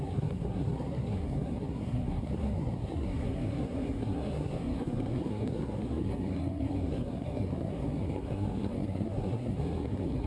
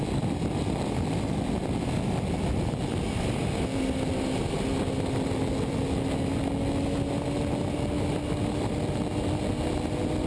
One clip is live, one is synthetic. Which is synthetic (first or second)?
first